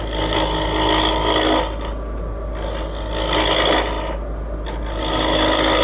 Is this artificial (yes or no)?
no